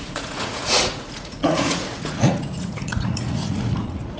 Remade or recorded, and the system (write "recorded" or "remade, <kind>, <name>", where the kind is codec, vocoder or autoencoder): remade, vocoder, Vocos